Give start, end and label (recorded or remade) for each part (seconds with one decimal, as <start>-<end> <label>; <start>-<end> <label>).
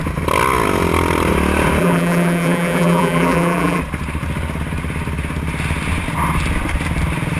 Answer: 0.0-1.8 recorded; 1.8-3.8 remade; 3.8-7.4 recorded